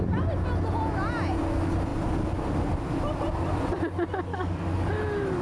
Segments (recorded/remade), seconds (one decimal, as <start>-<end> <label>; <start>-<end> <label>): 0.0-4.3 recorded; 4.3-4.9 remade; 4.9-5.4 recorded